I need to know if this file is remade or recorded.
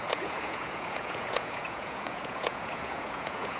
remade